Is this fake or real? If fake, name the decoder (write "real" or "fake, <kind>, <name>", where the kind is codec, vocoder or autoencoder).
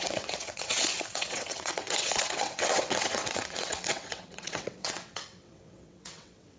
fake, vocoder, WaveNeXt